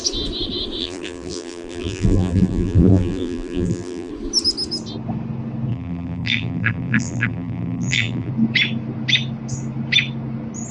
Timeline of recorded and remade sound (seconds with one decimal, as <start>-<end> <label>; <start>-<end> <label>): 0.0-0.8 recorded; 0.8-4.1 remade; 4.1-5.7 recorded; 5.7-8.3 remade; 8.3-10.7 recorded